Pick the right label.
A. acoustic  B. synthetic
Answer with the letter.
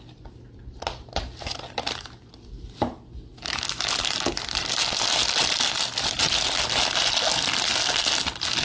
A